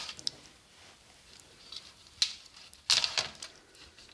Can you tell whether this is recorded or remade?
recorded